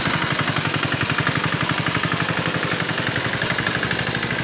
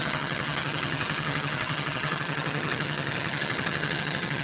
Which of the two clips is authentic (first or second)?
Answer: first